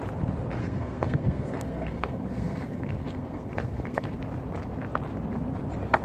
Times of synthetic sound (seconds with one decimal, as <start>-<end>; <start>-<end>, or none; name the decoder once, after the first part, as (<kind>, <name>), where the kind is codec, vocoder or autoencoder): 0.6-4.2 (codec, SNAC)